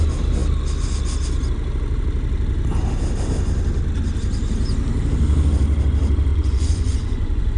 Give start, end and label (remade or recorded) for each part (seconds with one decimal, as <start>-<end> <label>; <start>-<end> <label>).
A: 0.0-6.3 recorded; 6.3-7.6 remade